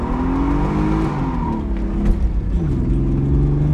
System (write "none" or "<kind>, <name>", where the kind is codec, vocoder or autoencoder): none